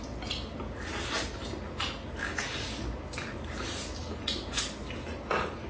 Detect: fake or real real